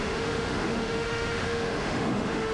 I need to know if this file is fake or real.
fake